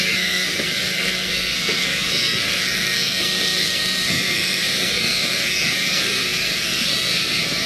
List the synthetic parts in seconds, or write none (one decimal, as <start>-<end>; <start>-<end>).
0.0-7.7